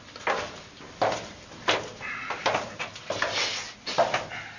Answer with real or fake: real